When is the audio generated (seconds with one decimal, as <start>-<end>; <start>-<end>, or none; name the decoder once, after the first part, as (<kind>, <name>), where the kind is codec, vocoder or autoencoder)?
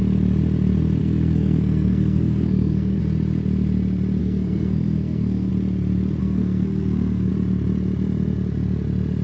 1.0-3.0 (codec, SNAC); 4.2-5.5; 6.2-7.3